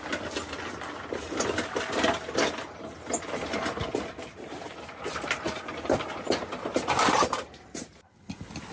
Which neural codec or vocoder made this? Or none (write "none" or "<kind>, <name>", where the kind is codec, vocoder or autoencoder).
none